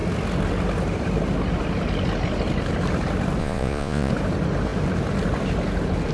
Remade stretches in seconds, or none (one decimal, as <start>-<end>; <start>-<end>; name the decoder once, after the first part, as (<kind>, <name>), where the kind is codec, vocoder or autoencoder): 3.4-4.1 (vocoder, Vocos)